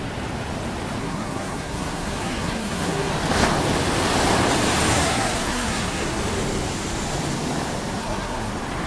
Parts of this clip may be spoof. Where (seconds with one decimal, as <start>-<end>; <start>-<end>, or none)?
1.0-3.1; 4.9-6.2; 8.0-8.5